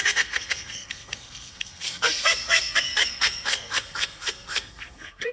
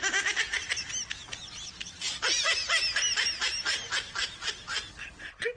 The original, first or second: second